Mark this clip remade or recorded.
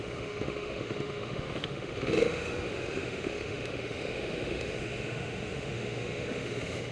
remade